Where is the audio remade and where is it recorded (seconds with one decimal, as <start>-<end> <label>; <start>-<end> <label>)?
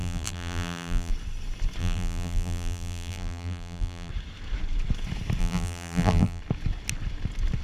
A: 0.0-1.1 remade; 1.1-1.8 recorded; 1.8-4.1 remade; 4.1-5.4 recorded; 5.4-6.4 remade; 6.4-7.6 recorded